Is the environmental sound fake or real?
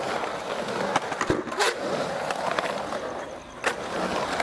real